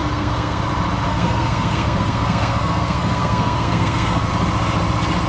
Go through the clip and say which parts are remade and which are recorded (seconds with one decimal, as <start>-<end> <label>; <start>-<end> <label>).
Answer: 0.0-0.6 remade; 0.6-1.1 recorded; 1.1-4.3 remade; 4.3-5.3 recorded